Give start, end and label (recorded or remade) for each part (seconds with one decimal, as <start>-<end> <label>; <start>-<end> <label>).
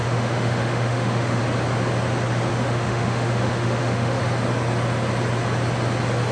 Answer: 0.0-1.4 remade; 1.4-2.5 recorded; 2.5-4.2 remade; 4.2-6.3 recorded